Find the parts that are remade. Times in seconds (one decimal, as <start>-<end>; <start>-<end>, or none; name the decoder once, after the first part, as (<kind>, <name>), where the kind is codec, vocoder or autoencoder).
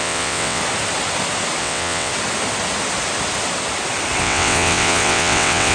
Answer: 0.0-0.6 (vocoder, WaveNeXt); 1.6-2.1; 4.2-5.7